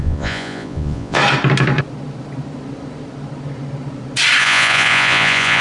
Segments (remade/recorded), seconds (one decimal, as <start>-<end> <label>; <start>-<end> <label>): 0.0-1.2 remade; 1.2-4.4 recorded; 4.4-5.6 remade